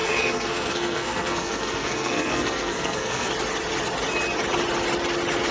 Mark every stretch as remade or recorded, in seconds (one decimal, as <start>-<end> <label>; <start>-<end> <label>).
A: 0.0-3.3 remade; 3.3-5.5 recorded